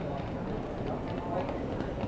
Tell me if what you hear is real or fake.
real